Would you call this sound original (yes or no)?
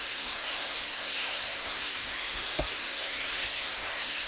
no